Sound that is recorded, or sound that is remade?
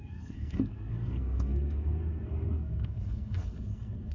remade